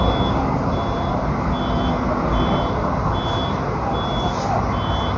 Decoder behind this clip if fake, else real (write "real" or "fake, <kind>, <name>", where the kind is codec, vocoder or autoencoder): real